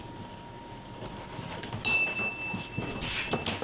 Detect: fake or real real